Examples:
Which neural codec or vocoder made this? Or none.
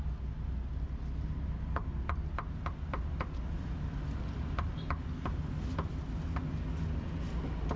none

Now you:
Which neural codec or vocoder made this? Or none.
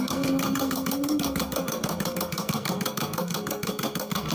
codec, SNAC